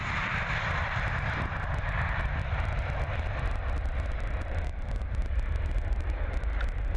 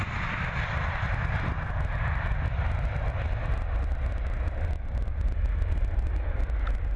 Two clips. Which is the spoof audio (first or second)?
first